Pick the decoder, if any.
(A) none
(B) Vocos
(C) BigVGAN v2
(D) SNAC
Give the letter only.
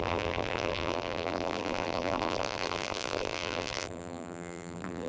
C